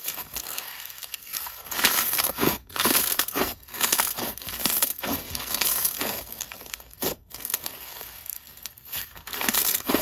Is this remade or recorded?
remade